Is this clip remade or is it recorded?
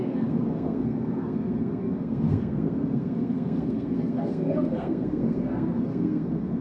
remade